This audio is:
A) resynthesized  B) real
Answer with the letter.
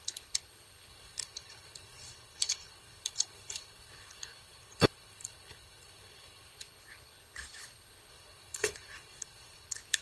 A